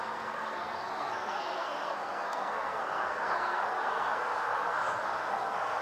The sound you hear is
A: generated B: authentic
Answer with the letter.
A